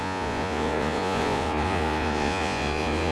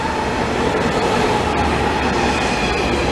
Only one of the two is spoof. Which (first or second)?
first